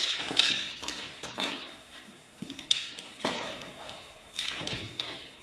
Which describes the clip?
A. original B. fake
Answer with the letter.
B